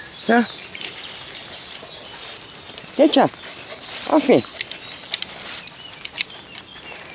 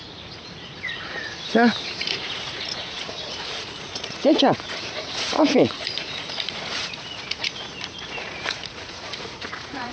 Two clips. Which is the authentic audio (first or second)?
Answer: first